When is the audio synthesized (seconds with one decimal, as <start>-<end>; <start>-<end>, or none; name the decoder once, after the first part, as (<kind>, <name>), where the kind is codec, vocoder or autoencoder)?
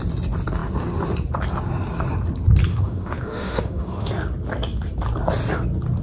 2.7-4.1 (autoencoder, DAC-VAE)